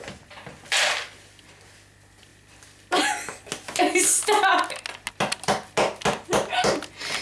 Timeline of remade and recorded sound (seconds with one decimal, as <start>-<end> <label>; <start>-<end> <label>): 0.0-7.2 recorded